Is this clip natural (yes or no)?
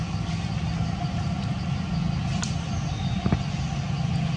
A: yes